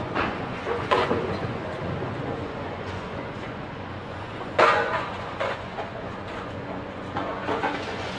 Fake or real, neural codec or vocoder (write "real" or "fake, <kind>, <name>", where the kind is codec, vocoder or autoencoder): fake, vocoder, Vocos